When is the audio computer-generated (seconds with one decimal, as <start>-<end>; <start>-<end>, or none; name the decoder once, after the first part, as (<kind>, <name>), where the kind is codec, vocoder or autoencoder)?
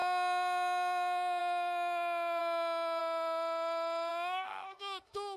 0.0-2.4 (autoencoder, DAC-VAE); 3.0-5.4